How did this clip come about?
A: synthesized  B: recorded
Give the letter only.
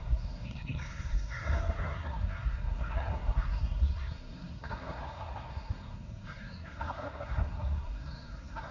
A